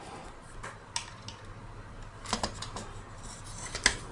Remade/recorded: recorded